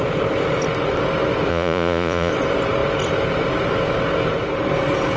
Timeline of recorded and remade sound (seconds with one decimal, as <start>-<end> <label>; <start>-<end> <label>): 0.0-1.5 recorded; 1.5-2.3 remade; 2.3-5.2 recorded